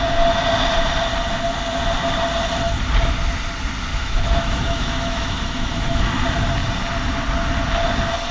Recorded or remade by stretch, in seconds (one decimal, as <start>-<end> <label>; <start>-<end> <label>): 0.0-3.9 recorded; 3.9-6.0 remade; 6.0-8.3 recorded

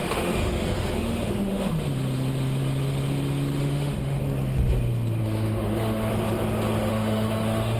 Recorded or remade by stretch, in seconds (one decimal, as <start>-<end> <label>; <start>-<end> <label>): 0.0-1.7 remade; 1.7-3.6 recorded; 3.6-4.2 remade; 4.2-5.2 recorded; 5.2-6.1 remade; 6.1-6.9 recorded; 6.9-7.8 remade

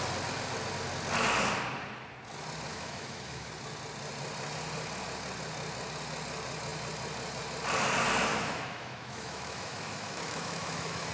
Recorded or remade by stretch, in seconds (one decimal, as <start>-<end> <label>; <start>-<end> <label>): 0.0-2.7 recorded; 2.7-3.5 remade; 3.5-8.3 recorded; 8.3-11.1 remade